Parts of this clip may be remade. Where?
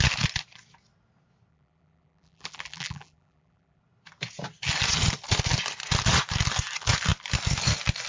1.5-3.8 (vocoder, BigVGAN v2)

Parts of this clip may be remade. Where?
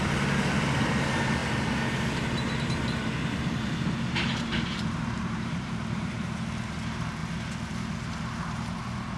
1.4-6.4 (vocoder, BigVGAN v2)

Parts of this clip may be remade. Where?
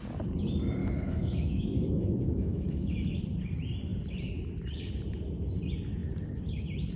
0.8-3.2 (autoencoder, DAC-VAE)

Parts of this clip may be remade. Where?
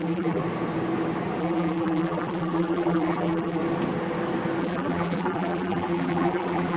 0.0-0.4 (vocoder, BigVGAN v2); 1.4-3.6; 4.6-6.8